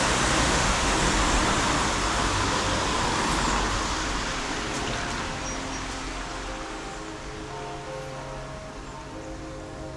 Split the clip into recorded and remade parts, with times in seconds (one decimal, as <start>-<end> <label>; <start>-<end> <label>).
0.0-0.4 recorded; 0.4-0.9 remade; 0.9-10.0 recorded